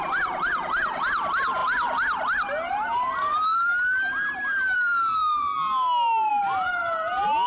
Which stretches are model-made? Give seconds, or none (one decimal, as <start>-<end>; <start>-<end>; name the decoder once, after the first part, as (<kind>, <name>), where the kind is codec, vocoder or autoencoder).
0.0-3.7 (vocoder, BigVGAN v2); 4.3-5.5; 6.3-7.5

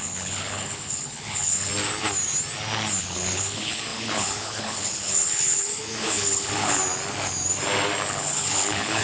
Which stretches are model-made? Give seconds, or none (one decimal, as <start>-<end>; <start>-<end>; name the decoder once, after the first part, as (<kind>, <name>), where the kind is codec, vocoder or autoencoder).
0.0-1.7 (codec, HILCodec); 3.0-6.8; 8.1-9.0

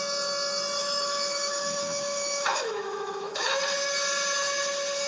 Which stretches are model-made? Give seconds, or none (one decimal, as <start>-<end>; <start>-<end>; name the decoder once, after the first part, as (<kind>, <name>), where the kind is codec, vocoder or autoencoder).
0.8-3.6 (autoencoder, DAC-VAE)

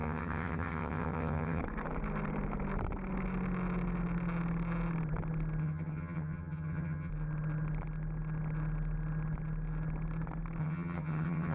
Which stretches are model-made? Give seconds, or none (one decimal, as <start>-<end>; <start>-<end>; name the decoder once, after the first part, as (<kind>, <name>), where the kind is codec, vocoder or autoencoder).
0.0-1.6 (vocoder, HiFi-GAN); 5.6-7.1; 10.6-11.5

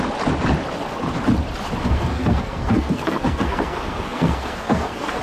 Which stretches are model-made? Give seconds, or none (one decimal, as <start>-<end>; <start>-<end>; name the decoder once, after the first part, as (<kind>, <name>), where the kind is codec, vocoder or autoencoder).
1.8-5.2 (codec, SNAC)